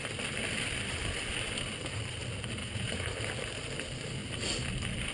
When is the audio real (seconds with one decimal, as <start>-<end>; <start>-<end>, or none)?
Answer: 0.0-2.6; 3.1-5.1